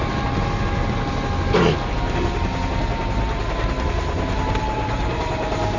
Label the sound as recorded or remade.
recorded